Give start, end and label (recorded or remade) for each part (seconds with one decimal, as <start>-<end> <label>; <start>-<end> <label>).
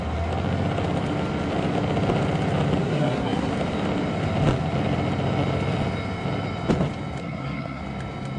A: 0.0-2.8 recorded; 2.8-3.5 remade; 3.5-7.2 recorded; 7.2-7.8 remade; 7.8-8.4 recorded